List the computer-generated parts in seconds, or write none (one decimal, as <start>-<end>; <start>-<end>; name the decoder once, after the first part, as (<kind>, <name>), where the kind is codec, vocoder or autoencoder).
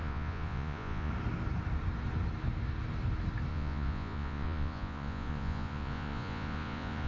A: 0.0-1.1 (vocoder, Vocos); 3.5-7.1